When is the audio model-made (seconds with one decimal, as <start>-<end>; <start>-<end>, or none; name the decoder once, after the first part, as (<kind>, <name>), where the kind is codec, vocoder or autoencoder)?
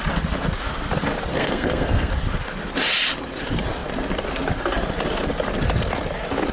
1.3-2.1 (codec, SNAC)